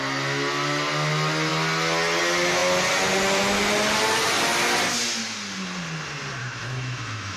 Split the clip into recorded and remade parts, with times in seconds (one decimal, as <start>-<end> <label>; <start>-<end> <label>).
0.0-6.4 recorded; 6.4-7.4 remade